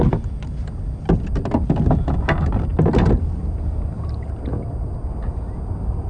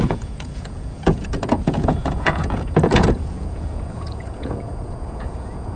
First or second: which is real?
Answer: first